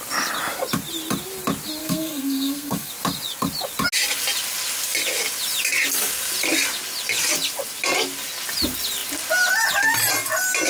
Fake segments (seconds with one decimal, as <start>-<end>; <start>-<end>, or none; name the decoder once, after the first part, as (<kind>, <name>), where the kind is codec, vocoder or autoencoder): 1.8-2.9 (codec, SNAC)